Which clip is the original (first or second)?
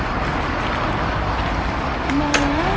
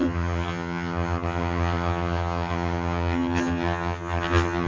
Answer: first